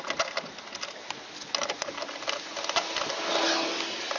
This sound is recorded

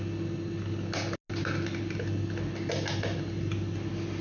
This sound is recorded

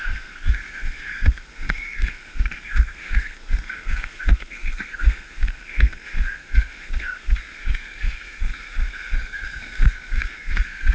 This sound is remade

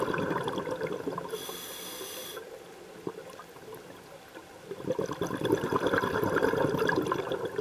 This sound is recorded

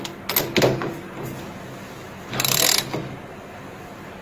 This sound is recorded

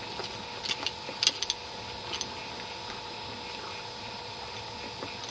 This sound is recorded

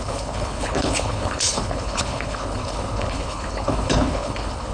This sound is remade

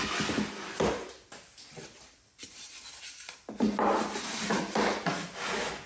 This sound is recorded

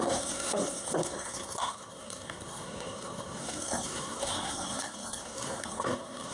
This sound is remade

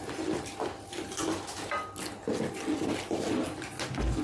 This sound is recorded